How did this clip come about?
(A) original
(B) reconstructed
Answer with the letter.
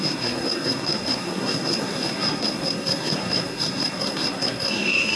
B